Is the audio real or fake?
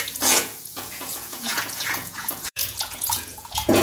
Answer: fake